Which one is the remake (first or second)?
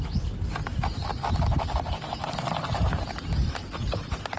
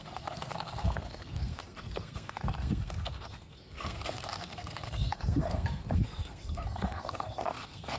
second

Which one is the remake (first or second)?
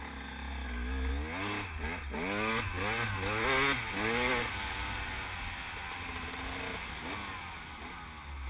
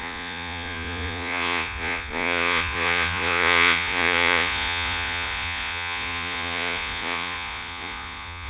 second